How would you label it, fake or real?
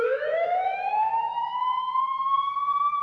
fake